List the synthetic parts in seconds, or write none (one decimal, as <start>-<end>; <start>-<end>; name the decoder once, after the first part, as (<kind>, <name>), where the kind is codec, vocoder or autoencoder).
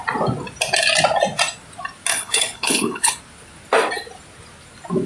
2.1-3.1 (codec, HILCodec)